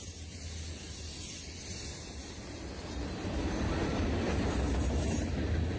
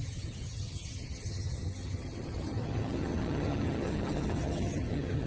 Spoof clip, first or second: second